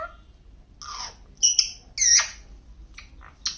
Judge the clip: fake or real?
real